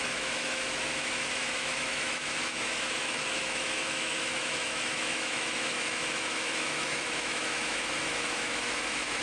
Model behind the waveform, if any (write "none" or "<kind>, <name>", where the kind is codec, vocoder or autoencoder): autoencoder, DAC-VAE